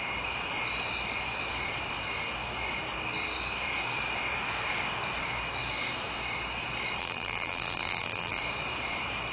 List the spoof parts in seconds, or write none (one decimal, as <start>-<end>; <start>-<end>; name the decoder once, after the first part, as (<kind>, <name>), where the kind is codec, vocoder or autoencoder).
7.0-8.4 (vocoder, BigVGAN v2)